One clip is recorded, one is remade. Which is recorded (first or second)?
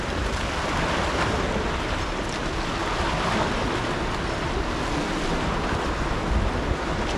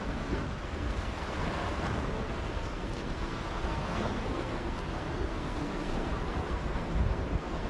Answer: first